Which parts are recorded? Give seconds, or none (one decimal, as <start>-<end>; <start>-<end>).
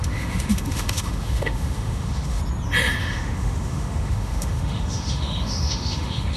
2.4-3.0